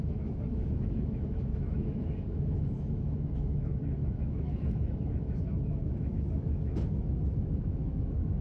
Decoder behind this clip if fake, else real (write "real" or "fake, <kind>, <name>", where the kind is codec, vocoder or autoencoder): fake, autoencoder, DAC-VAE